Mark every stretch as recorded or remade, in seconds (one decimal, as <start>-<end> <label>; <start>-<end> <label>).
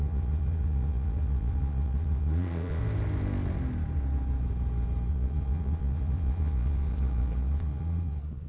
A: 0.0-2.8 remade; 2.8-5.1 recorded; 5.1-8.5 remade